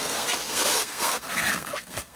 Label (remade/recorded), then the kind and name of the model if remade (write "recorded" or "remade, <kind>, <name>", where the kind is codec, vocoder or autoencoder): remade, codec, SNAC